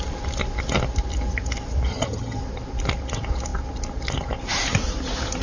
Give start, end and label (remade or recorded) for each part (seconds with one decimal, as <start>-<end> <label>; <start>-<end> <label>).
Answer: 0.0-1.9 recorded; 1.9-2.4 remade; 2.4-5.4 recorded